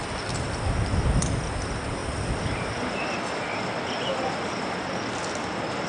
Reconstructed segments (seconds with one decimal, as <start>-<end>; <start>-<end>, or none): 2.0-3.4